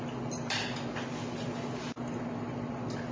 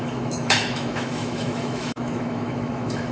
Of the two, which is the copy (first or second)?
second